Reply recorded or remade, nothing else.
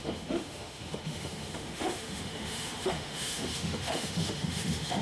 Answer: remade